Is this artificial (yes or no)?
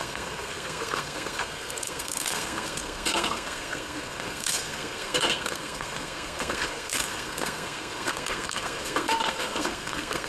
yes